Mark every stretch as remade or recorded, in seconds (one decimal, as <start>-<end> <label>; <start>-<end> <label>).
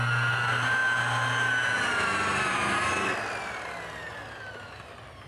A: 0.0-5.3 recorded